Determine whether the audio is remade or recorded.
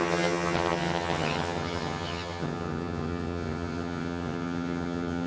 remade